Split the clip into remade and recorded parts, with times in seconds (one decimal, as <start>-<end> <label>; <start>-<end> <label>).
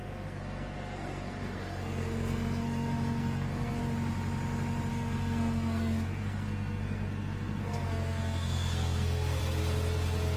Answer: 0.0-3.8 remade; 3.8-4.9 recorded; 4.9-9.4 remade; 9.4-10.4 recorded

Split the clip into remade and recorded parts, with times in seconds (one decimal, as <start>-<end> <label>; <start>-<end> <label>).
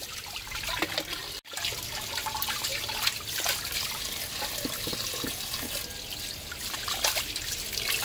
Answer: 0.0-8.0 recorded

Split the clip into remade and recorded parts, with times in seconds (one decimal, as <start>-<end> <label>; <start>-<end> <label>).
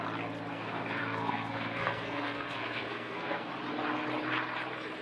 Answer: 0.0-0.5 recorded; 0.5-3.5 remade; 3.5-5.0 recorded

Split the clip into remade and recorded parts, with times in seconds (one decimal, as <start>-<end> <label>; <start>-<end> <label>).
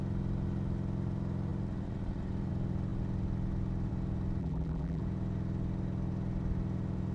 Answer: 0.0-4.4 recorded; 4.4-5.0 remade; 5.0-7.1 recorded